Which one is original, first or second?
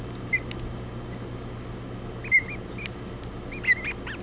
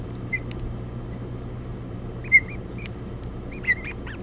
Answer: first